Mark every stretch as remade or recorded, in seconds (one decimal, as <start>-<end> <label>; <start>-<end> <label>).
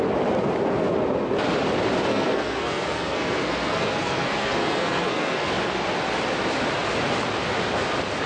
0.0-2.1 recorded; 2.1-5.5 remade; 5.5-8.3 recorded